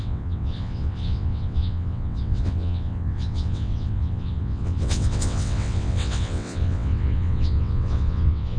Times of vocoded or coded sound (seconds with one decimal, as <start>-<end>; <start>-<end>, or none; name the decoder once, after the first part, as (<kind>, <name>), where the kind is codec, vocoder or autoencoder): 0.0-8.6 (vocoder, WaveNeXt)